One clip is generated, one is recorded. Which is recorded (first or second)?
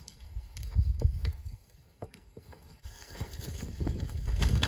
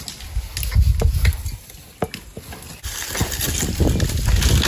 second